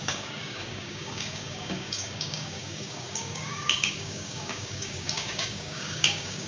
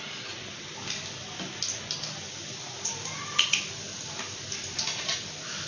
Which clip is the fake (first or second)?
first